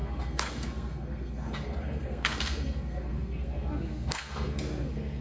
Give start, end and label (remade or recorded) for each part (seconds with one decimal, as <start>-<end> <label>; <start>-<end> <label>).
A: 0.0-5.2 remade